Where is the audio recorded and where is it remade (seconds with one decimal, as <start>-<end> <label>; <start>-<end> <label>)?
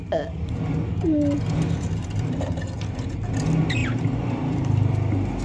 0.0-2.0 recorded; 2.0-2.6 remade; 2.6-3.8 recorded; 3.8-4.9 remade; 4.9-5.4 recorded